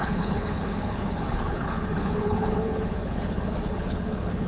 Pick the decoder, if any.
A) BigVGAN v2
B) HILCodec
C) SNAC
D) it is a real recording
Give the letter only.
B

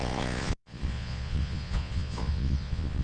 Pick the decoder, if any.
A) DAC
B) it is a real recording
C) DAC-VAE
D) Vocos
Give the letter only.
D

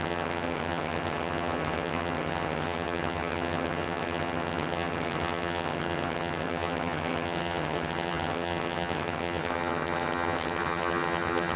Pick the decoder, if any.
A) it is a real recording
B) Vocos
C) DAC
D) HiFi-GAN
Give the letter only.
D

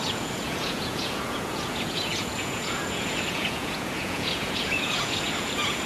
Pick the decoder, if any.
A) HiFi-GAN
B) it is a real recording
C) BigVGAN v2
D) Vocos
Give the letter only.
D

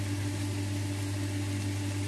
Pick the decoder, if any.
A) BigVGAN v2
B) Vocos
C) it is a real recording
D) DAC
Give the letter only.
C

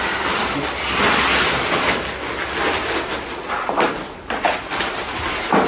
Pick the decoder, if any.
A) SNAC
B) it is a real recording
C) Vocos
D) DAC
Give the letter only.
B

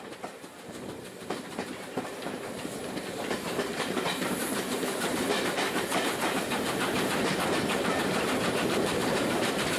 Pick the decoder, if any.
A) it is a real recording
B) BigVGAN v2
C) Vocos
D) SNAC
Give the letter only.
B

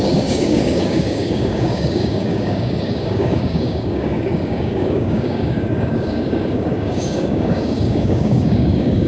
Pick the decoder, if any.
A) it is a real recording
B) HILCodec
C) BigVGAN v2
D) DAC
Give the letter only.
D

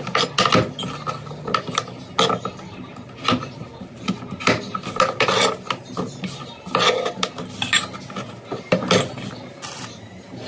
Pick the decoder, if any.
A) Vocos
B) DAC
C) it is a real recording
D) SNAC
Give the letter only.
C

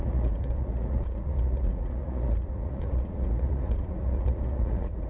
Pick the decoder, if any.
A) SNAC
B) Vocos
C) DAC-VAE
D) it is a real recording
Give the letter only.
B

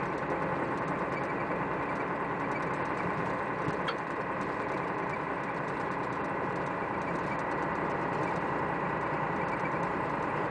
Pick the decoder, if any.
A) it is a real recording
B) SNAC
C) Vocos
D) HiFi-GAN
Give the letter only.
A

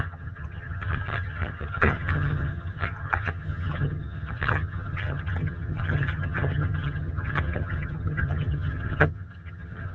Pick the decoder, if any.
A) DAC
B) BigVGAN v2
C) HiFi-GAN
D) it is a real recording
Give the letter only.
C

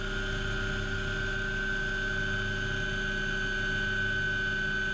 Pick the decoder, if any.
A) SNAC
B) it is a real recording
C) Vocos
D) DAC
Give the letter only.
B